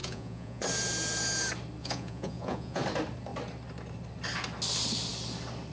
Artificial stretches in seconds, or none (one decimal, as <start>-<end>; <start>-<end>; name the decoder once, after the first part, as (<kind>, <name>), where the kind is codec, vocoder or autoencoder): 0.0-0.6 (vocoder, Vocos); 1.8-2.8